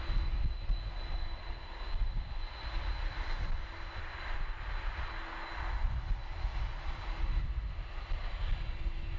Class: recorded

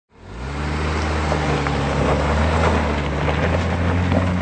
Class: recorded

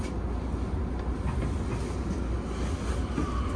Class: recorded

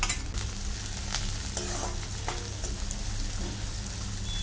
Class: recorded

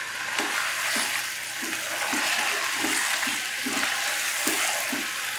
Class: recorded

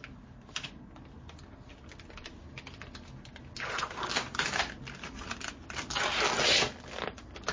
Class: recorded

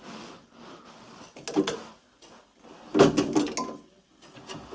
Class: recorded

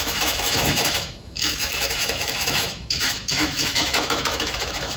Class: remade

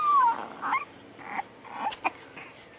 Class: recorded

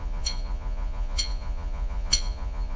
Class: remade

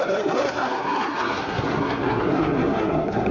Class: remade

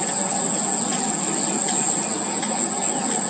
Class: recorded